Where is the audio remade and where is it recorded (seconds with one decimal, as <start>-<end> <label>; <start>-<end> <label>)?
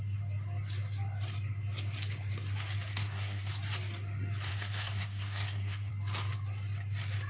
0.0-2.9 recorded; 2.9-3.5 remade; 3.5-4.5 recorded; 4.5-5.9 remade; 5.9-7.3 recorded